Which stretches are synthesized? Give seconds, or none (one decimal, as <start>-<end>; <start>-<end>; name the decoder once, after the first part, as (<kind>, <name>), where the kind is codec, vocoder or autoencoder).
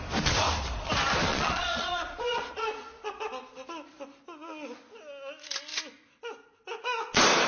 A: 1.3-3.2 (vocoder, Vocos)